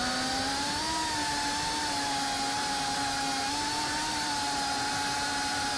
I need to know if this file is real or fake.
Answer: real